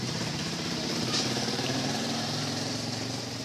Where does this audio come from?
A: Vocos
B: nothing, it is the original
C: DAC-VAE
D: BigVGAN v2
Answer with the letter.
D